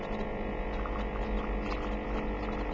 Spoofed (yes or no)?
no